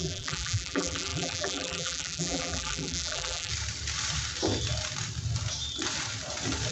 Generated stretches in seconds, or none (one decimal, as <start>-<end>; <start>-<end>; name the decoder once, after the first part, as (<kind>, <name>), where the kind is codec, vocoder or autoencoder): 0.0-3.5 (vocoder, BigVGAN v2)